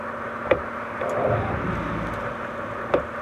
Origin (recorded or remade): recorded